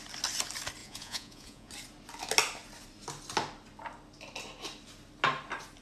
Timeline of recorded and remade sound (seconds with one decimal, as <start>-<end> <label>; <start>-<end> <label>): 0.0-0.8 recorded; 0.8-1.7 remade; 1.7-5.8 recorded

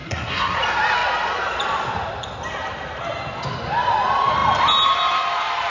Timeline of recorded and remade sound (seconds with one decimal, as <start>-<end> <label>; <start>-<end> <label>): 0.0-0.6 remade; 0.6-5.7 recorded

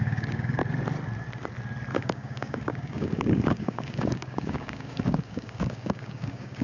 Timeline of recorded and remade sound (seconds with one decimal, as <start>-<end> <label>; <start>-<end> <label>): 0.0-0.6 remade; 0.6-1.9 recorded; 1.9-6.6 remade

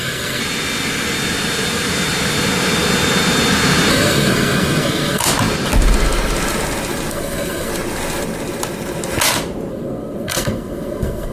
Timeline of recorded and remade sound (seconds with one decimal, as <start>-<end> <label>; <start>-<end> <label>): 0.0-0.4 remade; 0.4-3.9 recorded; 3.9-5.2 remade; 5.2-7.1 recorded; 7.1-7.7 remade; 7.7-9.7 recorded; 9.7-11.3 remade